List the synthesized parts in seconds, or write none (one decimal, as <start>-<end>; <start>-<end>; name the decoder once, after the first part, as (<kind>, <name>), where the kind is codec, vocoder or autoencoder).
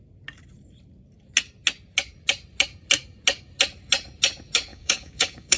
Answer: 4.7-5.6 (codec, DAC)